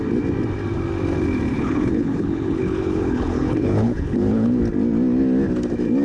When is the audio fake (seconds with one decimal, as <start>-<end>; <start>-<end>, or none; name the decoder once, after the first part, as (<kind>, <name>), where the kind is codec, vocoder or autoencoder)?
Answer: 1.5-4.6 (codec, HILCodec)